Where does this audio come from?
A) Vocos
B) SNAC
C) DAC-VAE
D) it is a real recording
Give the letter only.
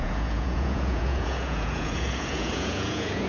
A